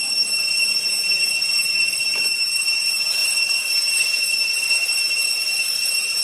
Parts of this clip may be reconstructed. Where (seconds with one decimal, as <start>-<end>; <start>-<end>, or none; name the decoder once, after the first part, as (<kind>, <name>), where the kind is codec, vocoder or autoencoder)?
0.0-6.2 (vocoder, BigVGAN v2)